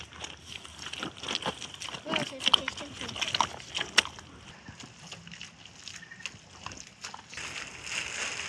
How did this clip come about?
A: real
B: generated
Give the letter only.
A